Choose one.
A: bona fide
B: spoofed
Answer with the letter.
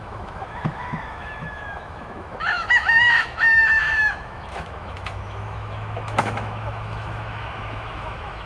B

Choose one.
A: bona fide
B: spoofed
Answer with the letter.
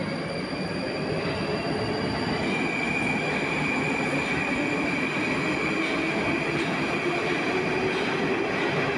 A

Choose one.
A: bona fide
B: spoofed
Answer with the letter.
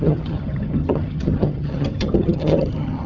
B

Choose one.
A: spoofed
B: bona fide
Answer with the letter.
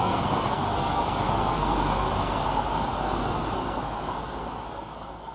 A